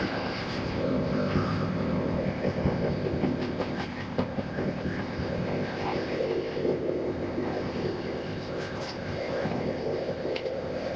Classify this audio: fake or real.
fake